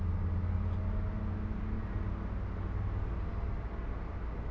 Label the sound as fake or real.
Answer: real